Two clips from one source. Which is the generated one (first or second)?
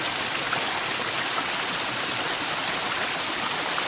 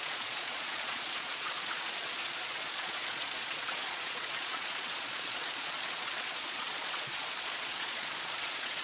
second